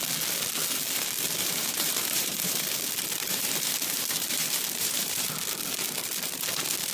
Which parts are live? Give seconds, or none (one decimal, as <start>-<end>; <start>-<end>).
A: 0.0-1.4; 2.6-3.2; 5.3-6.9